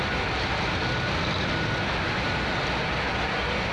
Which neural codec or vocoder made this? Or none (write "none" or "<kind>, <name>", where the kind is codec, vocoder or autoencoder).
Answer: none